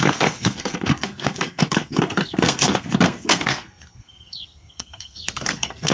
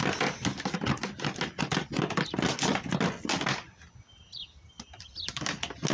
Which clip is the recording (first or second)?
second